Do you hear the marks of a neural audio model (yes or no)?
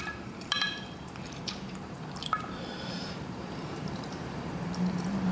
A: yes